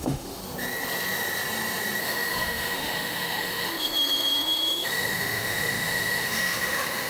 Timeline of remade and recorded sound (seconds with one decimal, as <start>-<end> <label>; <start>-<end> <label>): 0.0-0.4 remade; 0.4-2.0 recorded; 2.0-7.1 remade